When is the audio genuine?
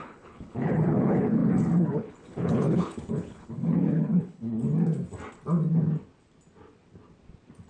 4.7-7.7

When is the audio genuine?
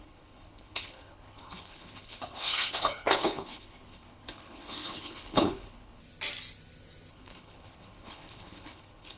6.0-7.1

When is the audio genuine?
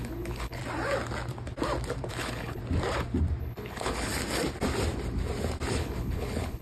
0.6-2.1; 2.6-3.4; 4.1-5.7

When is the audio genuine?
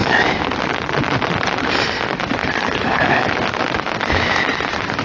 0.0-2.4; 3.3-5.0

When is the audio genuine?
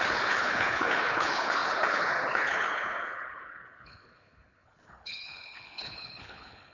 none